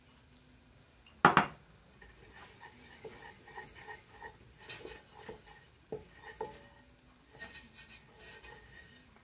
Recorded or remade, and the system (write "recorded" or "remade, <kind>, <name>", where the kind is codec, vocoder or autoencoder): recorded